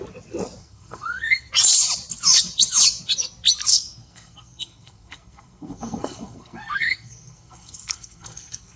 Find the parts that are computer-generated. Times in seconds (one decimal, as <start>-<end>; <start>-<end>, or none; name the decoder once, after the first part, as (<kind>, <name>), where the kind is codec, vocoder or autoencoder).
0.6-1.5 (codec, SNAC); 3.7-8.8